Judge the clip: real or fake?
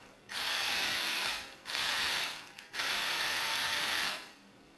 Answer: fake